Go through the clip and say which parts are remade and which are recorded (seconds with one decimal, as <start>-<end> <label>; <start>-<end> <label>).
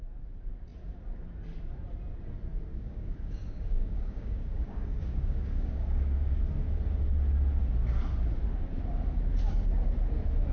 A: 0.0-2.7 recorded; 2.7-6.4 remade; 6.4-10.5 recorded